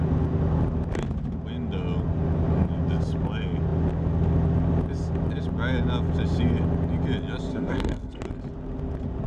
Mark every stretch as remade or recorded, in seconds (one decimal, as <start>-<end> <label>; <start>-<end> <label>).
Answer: 0.0-7.5 recorded; 7.5-8.2 remade; 8.2-9.3 recorded